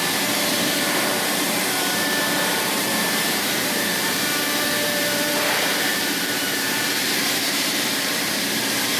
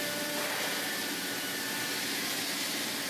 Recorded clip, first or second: second